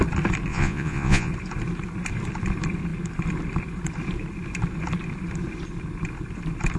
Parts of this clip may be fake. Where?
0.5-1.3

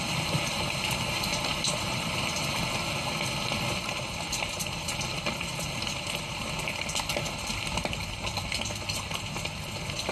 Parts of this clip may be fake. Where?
4.6-5.5

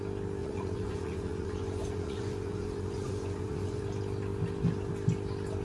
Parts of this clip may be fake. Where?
0.4-3.8

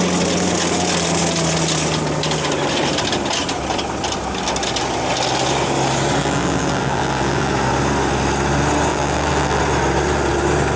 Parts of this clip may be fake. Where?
6.2-7.5; 8.9-9.6

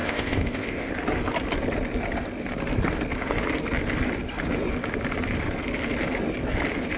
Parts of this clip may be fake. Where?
0.0-0.9

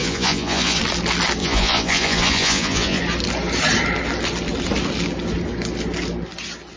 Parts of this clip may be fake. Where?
0.0-0.8; 1.4-3.0

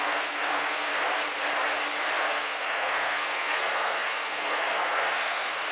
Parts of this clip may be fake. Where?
0.0-0.9; 2.2-5.7

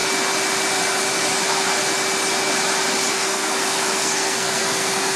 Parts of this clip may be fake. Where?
3.1-5.2